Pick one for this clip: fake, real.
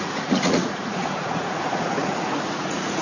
fake